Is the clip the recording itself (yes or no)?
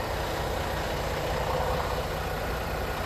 yes